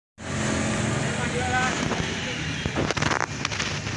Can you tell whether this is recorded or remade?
recorded